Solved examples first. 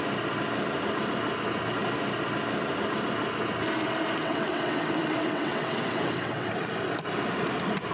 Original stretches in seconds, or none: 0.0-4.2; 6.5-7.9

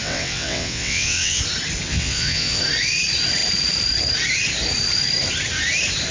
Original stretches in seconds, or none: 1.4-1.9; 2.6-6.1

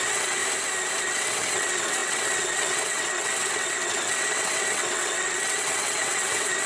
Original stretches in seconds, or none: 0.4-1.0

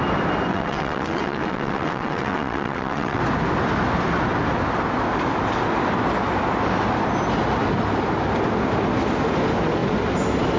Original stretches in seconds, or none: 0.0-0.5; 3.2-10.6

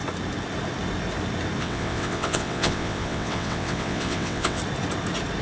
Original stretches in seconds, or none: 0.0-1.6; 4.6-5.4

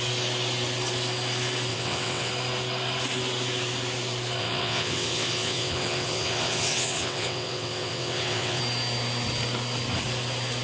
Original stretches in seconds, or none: 0.0-1.7; 2.3-4.4; 8.6-10.6

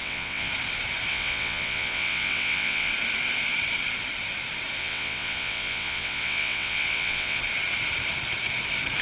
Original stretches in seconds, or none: 0.5-1.1; 2.9-4.8; 7.4-9.0

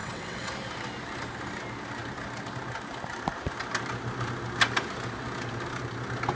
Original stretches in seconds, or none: 0.5-6.4